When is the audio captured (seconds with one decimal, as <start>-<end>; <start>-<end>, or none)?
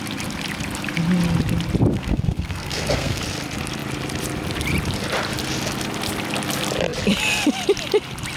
0.0-1.9; 3.2-8.4